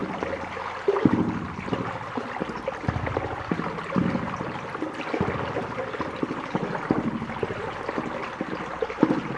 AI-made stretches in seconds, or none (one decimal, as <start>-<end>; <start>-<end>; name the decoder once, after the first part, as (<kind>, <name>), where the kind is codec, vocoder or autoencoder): none